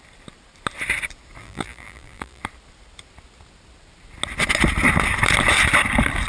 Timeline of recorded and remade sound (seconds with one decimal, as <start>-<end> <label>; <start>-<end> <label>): 0.0-1.4 recorded; 1.4-2.4 remade; 2.4-6.3 recorded